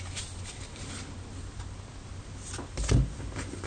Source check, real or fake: real